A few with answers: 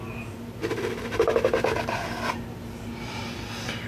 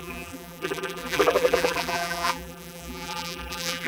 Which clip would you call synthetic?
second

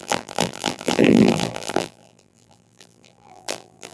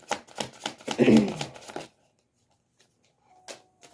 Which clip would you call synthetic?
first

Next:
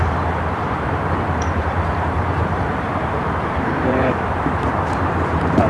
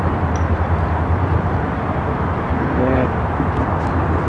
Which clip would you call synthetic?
first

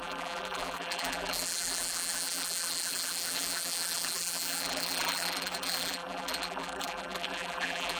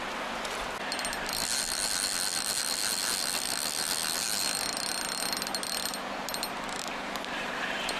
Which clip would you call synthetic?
first